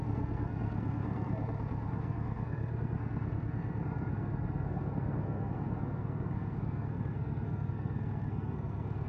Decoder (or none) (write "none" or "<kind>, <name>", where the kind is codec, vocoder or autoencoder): codec, SNAC